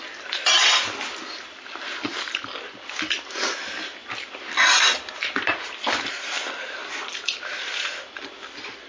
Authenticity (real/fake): real